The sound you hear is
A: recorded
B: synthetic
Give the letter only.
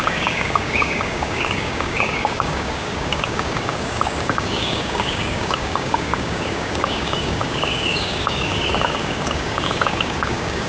B